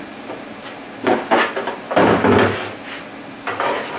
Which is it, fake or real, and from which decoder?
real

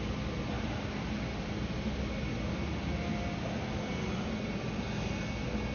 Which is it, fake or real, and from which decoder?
real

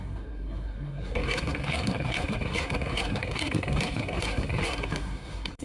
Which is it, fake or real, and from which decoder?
fake, codec, SNAC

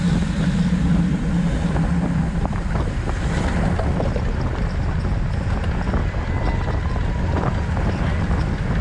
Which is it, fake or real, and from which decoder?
real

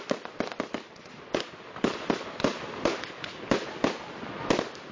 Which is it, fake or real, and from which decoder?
real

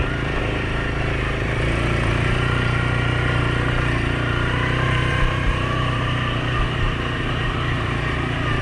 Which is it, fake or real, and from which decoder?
fake, vocoder, BigVGAN v2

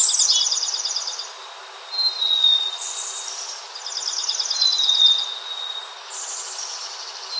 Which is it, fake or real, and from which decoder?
real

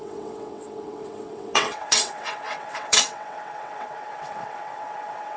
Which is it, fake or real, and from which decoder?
fake, vocoder, WaveNeXt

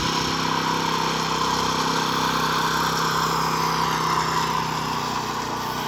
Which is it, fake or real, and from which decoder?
real